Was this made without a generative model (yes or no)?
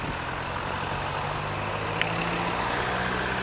yes